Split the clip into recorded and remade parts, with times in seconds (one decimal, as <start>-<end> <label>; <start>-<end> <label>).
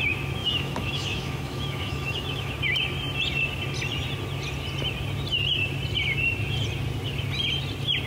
0.0-0.4 recorded; 0.4-2.5 remade; 2.5-8.1 recorded